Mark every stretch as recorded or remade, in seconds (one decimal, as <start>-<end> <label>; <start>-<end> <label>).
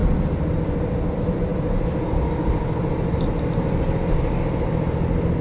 0.0-1.5 remade; 1.5-4.7 recorded; 4.7-5.4 remade